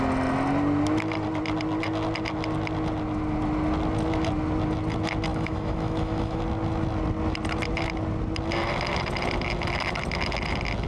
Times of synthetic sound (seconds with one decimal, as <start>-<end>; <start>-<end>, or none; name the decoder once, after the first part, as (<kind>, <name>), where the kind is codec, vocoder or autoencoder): 5.3-6.4 (autoencoder, DAC-VAE)